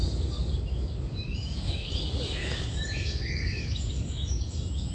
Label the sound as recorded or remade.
remade